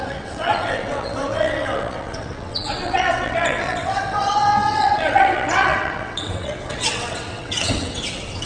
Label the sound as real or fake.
fake